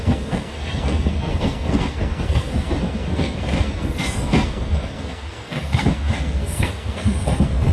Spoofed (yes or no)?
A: yes